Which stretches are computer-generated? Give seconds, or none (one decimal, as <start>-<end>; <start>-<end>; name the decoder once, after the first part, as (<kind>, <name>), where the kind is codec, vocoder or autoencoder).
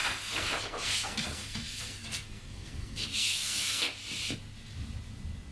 0.0-4.0 (codec, SNAC)